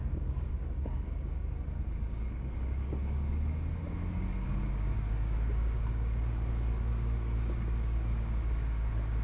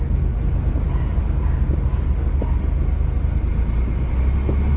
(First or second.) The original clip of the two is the second